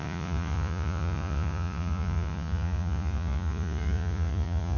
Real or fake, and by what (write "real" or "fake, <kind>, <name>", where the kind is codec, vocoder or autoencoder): fake, vocoder, Vocos